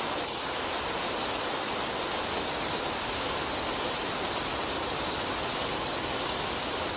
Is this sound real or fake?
real